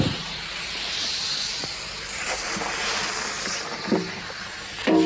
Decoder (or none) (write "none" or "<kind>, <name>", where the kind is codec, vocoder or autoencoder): none